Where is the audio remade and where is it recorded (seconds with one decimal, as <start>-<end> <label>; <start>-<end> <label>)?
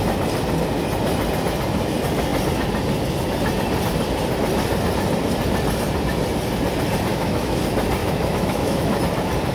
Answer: 0.0-7.1 recorded; 7.1-7.6 remade; 7.6-8.0 recorded; 8.0-9.0 remade; 9.0-9.5 recorded